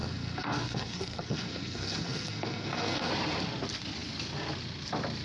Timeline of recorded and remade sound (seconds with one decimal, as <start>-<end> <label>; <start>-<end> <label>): 0.0-3.1 remade; 3.1-5.2 recorded